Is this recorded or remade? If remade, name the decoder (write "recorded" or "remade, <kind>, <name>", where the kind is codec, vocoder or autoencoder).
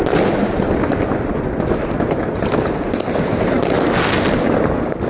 recorded